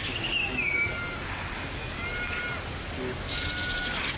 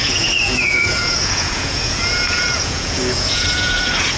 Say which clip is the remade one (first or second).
second